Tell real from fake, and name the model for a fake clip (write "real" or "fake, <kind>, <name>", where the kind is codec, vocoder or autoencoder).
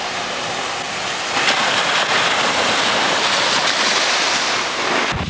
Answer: real